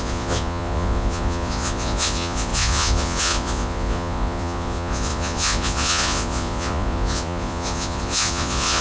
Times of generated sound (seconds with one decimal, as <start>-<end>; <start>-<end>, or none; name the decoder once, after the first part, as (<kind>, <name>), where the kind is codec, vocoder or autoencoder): 0.0-8.8 (vocoder, Vocos)